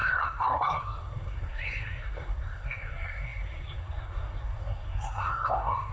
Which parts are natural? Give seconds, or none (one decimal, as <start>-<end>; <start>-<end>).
none